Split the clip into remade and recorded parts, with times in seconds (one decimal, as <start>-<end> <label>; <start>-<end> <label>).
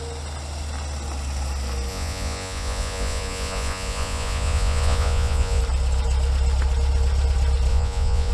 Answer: 0.0-1.9 recorded; 1.9-5.6 remade; 5.6-7.7 recorded; 7.7-8.3 remade